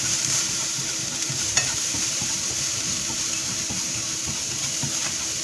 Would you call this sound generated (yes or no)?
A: yes